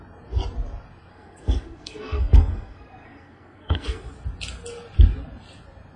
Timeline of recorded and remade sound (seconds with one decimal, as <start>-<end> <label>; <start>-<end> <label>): 0.0-1.1 recorded; 1.1-4.1 remade; 4.1-6.0 recorded